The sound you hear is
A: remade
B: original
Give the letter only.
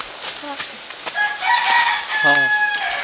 B